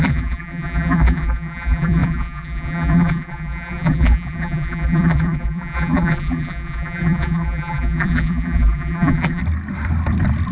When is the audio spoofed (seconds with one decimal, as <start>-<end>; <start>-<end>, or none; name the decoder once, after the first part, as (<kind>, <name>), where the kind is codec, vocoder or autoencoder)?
0.0-9.4 (vocoder, BigVGAN v2)